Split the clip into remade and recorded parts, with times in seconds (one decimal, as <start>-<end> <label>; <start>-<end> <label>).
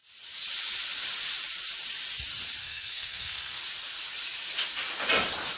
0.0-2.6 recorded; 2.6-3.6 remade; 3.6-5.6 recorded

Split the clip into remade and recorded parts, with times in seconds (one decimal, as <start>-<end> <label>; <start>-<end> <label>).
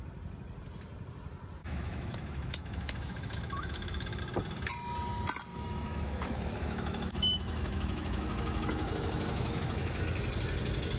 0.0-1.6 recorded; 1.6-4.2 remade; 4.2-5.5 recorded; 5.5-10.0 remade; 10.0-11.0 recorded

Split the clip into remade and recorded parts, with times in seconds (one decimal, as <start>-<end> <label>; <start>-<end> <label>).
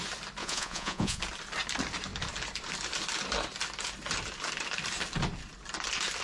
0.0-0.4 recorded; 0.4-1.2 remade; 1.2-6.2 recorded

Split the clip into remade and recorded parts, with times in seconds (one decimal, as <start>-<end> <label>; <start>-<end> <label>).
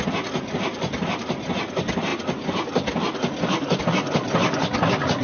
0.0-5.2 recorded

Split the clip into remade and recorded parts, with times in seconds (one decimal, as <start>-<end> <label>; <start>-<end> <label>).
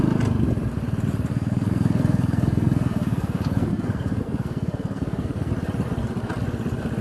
0.0-1.3 recorded; 1.3-5.5 remade; 5.5-7.0 recorded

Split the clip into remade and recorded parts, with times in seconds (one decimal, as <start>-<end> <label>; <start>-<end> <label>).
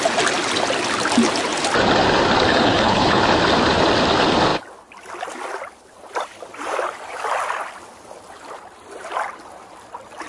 0.0-2.5 recorded; 2.5-3.2 remade; 3.2-10.3 recorded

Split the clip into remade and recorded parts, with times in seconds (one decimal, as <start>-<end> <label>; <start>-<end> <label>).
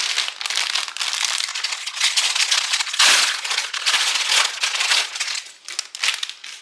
0.0-1.5 recorded; 1.5-5.5 remade; 5.5-6.6 recorded